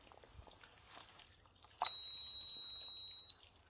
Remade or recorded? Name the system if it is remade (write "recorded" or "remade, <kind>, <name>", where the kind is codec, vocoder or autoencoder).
remade, vocoder, BigVGAN v2